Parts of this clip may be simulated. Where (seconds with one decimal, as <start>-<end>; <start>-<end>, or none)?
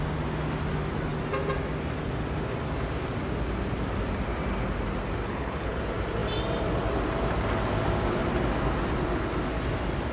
5.2-5.8